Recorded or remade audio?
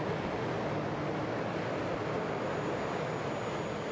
recorded